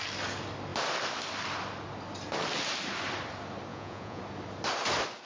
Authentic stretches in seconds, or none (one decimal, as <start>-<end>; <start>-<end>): 0.0-3.7; 4.2-5.3